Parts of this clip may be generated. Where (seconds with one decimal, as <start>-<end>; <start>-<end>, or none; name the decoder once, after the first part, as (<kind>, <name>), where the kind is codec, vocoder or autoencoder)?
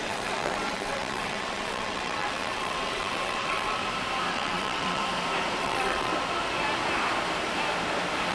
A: 0.0-3.8 (vocoder, WaveNeXt); 4.3-5.0; 5.6-6.1